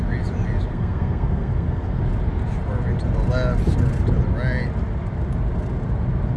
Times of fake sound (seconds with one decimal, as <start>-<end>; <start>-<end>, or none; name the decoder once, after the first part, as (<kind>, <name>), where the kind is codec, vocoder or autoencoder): 0.7-2.0 (codec, SNAC)